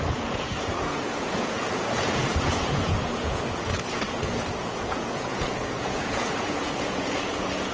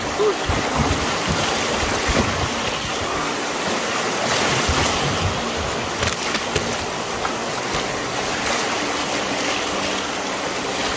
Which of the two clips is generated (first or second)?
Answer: first